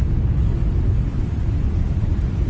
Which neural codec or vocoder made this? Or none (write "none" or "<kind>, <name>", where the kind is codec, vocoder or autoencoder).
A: none